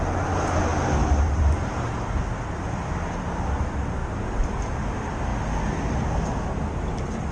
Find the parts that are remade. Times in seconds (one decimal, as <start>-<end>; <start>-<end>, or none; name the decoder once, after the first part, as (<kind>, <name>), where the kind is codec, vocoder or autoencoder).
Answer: none

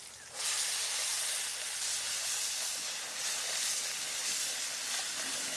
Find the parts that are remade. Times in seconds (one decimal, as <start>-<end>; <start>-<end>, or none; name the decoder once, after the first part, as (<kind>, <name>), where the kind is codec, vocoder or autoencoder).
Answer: 0.0-1.5 (vocoder, BigVGAN v2); 4.9-5.6

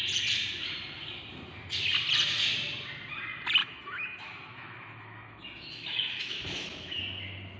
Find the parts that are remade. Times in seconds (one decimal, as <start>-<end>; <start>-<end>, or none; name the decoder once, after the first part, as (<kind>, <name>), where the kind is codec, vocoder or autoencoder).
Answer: 3.6-7.0 (autoencoder, DAC-VAE)

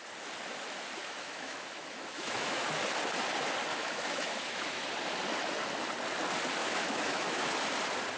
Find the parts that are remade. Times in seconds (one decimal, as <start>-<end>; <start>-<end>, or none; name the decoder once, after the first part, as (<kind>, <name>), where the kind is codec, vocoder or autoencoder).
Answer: 1.0-2.8 (autoencoder, DAC-VAE); 3.7-4.9; 6.6-7.5